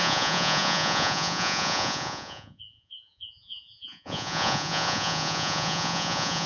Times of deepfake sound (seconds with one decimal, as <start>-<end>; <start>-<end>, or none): 0.0-6.5